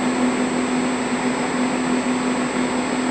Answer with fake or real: real